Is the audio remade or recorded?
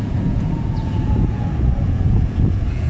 remade